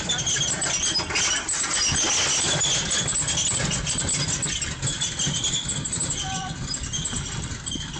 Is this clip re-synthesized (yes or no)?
no